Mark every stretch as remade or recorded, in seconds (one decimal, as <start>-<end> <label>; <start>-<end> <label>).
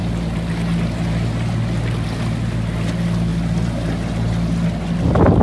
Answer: 0.0-5.4 recorded